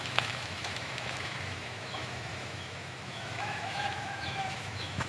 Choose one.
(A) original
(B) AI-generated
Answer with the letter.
B